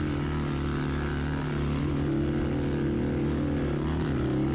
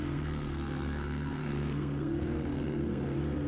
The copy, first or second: second